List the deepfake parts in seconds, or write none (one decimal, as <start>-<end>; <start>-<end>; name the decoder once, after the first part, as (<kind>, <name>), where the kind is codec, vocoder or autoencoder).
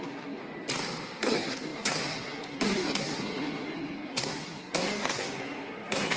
0.0-0.4 (codec, SNAC); 1.2-6.2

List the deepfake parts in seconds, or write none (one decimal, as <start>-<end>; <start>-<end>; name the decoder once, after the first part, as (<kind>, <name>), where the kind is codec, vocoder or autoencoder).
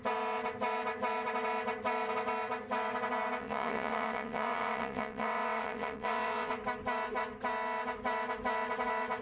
3.4-6.5 (vocoder, WaveNeXt)